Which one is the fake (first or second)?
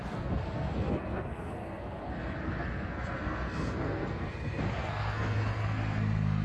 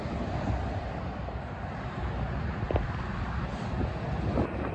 first